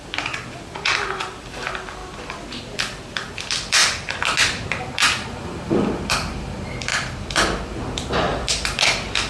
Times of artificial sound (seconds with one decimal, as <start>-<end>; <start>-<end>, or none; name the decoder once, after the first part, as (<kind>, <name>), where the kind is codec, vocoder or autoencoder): 0.0-2.0 (vocoder, BigVGAN v2); 2.6-3.8; 4.6-9.3